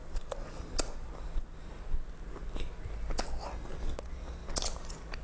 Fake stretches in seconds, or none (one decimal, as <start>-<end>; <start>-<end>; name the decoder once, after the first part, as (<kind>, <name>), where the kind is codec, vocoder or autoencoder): none